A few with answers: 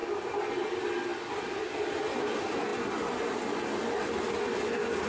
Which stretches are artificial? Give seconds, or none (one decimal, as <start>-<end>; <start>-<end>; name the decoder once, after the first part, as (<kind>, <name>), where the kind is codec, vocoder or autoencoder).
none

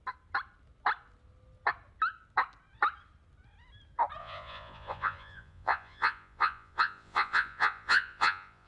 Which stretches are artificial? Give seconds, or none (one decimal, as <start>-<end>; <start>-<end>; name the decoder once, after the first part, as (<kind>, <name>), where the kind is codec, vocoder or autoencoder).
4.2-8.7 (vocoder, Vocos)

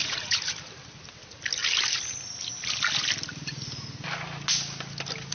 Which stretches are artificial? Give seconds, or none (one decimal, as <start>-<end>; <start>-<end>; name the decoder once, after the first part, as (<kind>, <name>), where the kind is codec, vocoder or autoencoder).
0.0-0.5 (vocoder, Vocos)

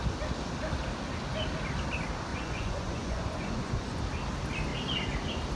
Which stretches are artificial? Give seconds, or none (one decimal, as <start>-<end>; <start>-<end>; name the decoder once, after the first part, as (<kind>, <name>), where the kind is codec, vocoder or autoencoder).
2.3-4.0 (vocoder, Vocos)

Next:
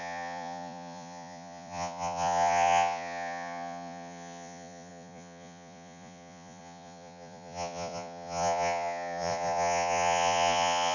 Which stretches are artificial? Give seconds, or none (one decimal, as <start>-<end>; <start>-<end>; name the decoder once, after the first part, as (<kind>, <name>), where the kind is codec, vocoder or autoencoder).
0.0-10.9 (vocoder, Vocos)

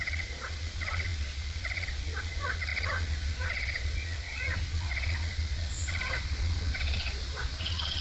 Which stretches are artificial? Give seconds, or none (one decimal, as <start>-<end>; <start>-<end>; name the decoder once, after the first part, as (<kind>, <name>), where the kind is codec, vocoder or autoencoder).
0.0-8.0 (vocoder, Vocos)

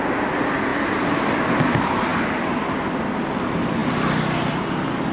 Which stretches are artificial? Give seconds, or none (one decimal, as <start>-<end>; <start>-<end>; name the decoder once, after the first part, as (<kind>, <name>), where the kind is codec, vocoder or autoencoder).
none